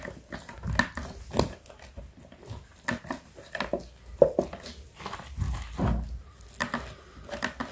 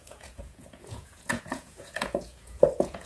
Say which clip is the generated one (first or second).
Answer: second